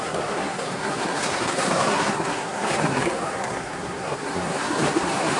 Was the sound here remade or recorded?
remade